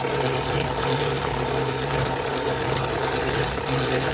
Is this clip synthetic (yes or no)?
yes